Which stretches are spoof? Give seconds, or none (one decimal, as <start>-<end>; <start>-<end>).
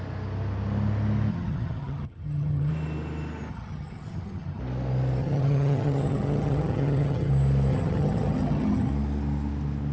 1.3-2.7; 3.5-4.6; 5.2-7.3; 7.7-8.9